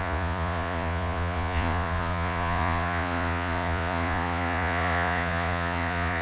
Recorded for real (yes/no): no